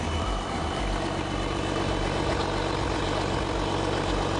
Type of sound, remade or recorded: recorded